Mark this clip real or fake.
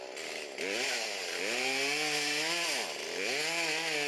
real